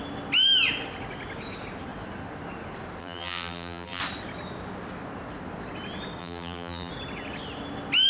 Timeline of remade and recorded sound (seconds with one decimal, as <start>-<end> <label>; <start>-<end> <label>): 0.0-3.0 recorded; 3.0-4.0 remade; 4.0-6.2 recorded; 6.2-6.9 remade; 6.9-8.1 recorded

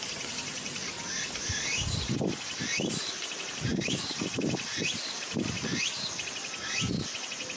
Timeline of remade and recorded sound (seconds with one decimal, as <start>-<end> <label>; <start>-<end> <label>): 0.0-3.7 recorded; 3.7-4.4 remade; 4.4-7.6 recorded

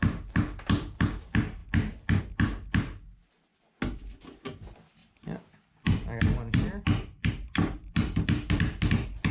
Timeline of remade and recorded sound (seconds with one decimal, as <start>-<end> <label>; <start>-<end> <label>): 0.0-5.0 recorded; 5.0-7.3 remade; 7.3-9.3 recorded